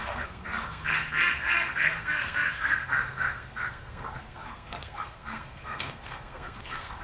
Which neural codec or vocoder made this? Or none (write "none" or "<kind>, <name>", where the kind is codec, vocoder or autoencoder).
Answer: codec, SNAC